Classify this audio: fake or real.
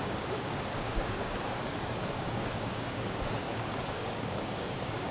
fake